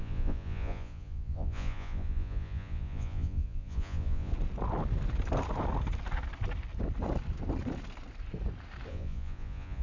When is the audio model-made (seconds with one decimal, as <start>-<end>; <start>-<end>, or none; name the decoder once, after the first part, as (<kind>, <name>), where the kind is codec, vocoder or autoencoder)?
0.0-4.3 (vocoder, Vocos); 8.9-9.8